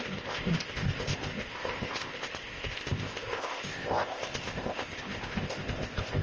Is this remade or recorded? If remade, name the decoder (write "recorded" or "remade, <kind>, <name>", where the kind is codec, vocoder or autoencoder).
remade, codec, ZipCodec